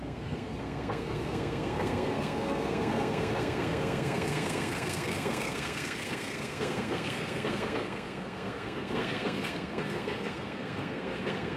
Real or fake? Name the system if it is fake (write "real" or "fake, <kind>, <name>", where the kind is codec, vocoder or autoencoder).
fake, codec, SNAC